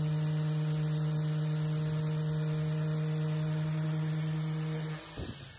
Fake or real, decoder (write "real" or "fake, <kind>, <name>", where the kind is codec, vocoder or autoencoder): real